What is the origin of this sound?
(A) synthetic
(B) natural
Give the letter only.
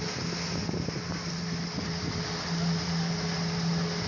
B